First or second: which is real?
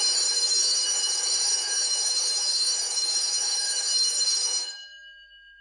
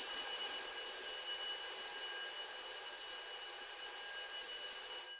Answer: second